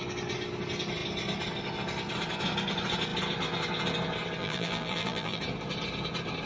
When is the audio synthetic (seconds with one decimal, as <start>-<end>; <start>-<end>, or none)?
4.4-5.4